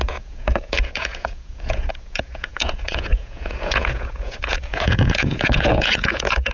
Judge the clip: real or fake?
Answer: fake